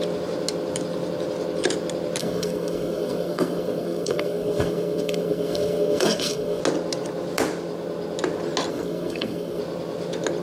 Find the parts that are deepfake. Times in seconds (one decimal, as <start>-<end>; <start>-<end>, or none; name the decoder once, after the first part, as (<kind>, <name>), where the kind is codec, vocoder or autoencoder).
2.2-6.6 (codec, SNAC); 8.7-9.6